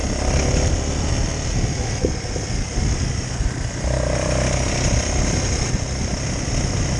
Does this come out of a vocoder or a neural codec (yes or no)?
yes